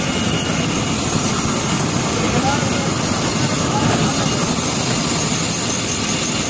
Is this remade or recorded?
recorded